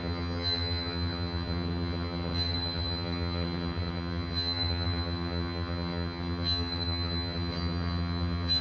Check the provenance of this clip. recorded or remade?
remade